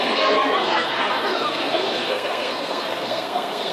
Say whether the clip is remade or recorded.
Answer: remade